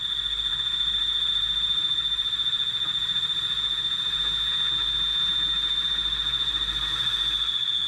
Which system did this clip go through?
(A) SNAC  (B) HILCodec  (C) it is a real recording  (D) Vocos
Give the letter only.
C